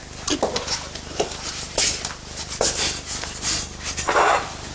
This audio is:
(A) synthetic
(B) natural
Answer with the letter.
B